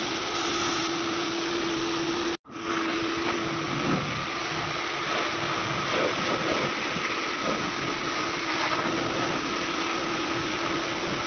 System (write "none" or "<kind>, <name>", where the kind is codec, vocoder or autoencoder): none